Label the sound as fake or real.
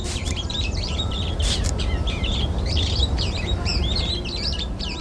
fake